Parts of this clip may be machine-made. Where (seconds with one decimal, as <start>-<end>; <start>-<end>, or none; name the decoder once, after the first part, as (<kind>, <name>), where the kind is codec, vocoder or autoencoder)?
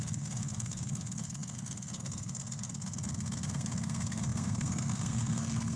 0.0-5.8 (codec, SNAC)